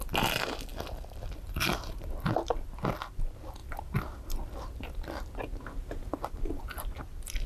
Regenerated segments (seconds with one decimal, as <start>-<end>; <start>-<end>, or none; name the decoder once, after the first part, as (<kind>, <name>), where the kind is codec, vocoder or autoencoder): 0.0-3.6 (vocoder, BigVGAN v2); 7.0-7.5